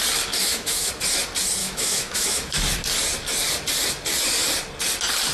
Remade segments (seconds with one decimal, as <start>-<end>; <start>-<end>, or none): 0.4-0.9; 1.6-2.6